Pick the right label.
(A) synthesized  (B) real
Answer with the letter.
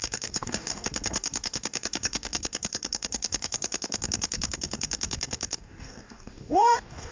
A